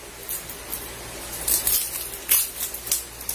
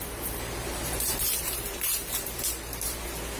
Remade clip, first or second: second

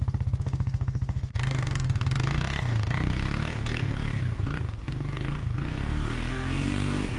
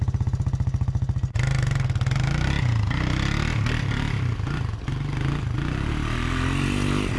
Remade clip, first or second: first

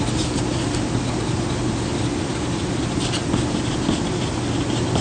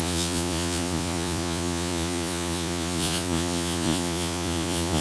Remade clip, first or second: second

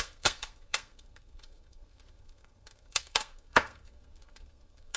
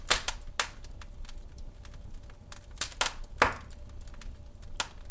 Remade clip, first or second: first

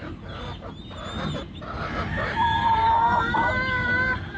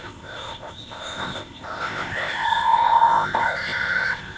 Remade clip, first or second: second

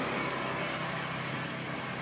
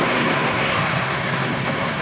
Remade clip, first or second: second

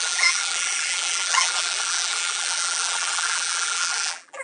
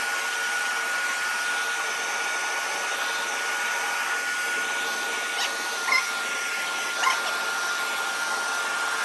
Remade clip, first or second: first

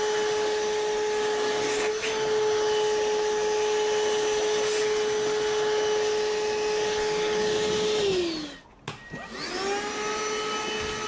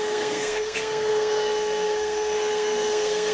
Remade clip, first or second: second